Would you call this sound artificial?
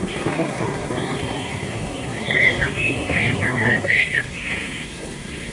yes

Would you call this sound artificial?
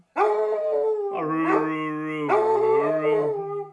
no